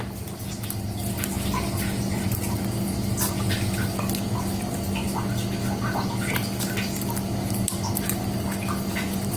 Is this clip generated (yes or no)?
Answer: no